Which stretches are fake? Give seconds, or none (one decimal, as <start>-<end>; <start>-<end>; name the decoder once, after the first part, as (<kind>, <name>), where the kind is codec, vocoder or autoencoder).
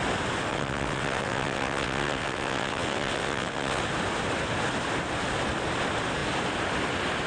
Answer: 0.5-3.8 (vocoder, WaveNeXt)